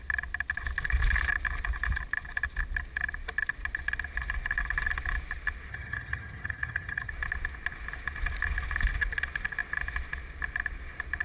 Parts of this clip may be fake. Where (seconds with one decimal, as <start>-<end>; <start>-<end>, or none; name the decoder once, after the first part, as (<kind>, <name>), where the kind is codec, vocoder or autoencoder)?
5.7-7.1 (vocoder, HiFi-GAN)